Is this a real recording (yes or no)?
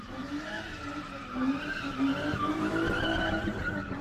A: no